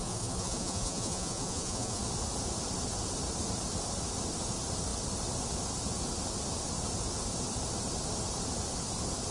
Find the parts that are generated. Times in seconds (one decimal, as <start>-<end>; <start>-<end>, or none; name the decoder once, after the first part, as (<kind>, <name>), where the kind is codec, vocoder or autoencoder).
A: 0.0-2.0 (vocoder, Vocos)